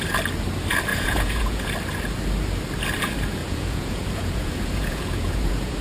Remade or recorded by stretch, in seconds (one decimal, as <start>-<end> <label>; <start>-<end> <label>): 0.0-0.9 recorded; 0.9-1.7 remade; 1.7-3.4 recorded; 3.4-5.8 remade